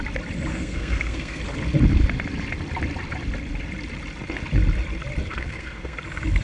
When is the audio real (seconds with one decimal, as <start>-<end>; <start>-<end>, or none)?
0.0-0.5; 1.4-5.3; 6.0-6.4